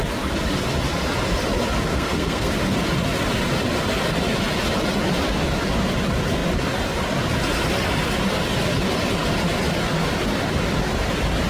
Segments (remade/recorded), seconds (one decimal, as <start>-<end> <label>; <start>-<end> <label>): 0.0-1.9 recorded; 1.9-2.5 remade; 2.5-11.5 recorded